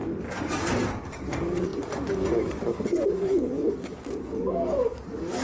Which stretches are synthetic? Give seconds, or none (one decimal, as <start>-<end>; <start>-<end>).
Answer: 1.0-5.4